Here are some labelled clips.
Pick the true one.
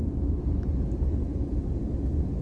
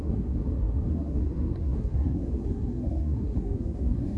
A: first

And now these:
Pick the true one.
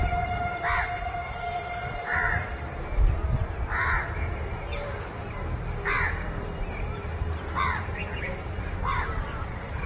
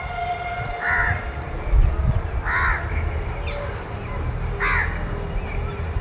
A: second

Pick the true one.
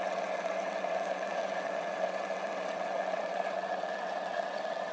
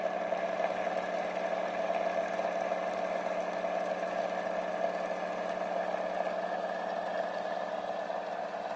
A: second